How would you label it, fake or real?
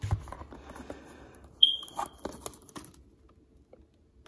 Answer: real